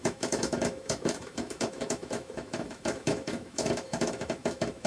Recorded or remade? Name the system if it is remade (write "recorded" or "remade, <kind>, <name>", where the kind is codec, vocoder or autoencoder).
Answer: remade, autoencoder, DAC-VAE